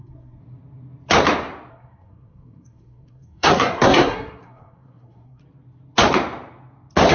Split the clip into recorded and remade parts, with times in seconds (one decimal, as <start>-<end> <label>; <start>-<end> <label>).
0.0-0.4 remade; 0.4-1.7 recorded; 1.7-5.4 remade; 5.4-7.1 recorded